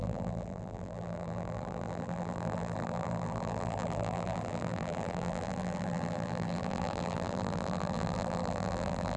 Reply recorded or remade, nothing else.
remade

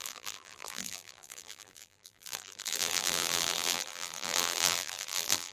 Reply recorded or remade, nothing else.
remade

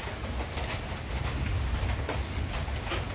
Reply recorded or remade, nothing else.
recorded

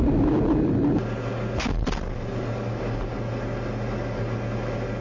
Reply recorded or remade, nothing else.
recorded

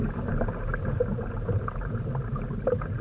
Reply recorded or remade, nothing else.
remade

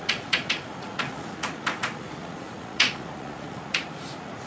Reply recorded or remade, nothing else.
remade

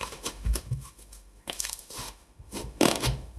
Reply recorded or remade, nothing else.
remade